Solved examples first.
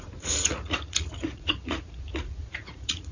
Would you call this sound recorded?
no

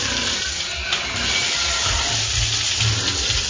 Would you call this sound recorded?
yes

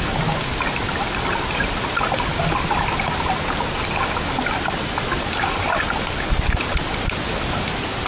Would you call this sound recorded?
yes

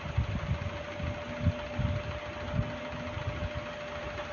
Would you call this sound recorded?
yes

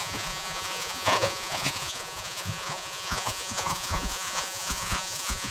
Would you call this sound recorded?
no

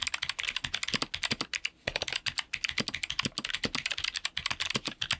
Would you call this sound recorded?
yes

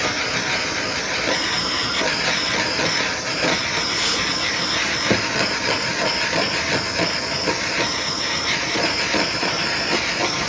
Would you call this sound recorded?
yes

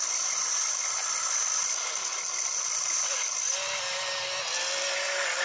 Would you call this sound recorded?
yes